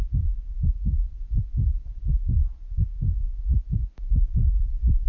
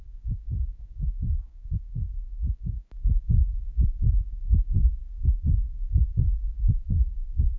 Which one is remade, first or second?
second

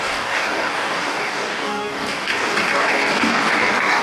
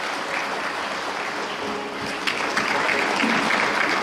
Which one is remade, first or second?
first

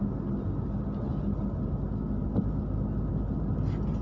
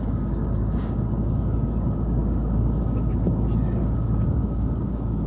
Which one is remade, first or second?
second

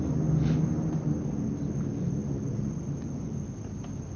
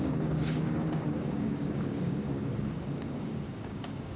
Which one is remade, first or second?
second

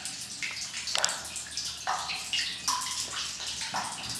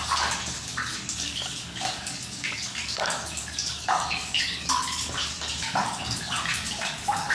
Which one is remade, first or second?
second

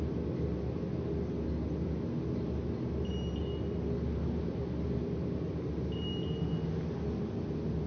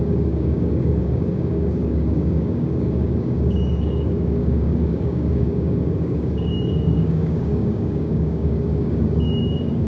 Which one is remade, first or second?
second